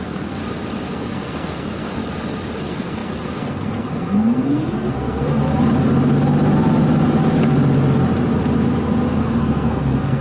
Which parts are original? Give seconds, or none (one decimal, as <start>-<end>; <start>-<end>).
0.4-0.9; 2.0-2.6; 5.4-9.2